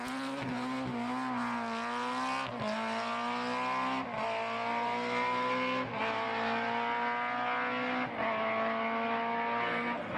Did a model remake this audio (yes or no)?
no